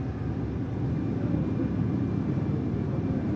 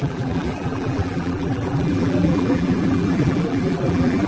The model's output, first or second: second